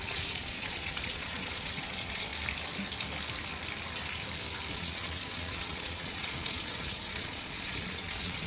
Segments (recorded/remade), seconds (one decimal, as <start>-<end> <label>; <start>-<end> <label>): 0.0-2.3 remade; 2.3-4.7 recorded; 4.7-8.5 remade